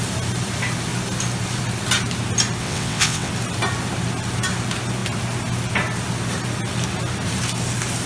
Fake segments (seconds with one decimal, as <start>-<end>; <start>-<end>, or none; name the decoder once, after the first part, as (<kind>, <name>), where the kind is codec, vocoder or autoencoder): 2.6-3.3 (vocoder, WaveNeXt)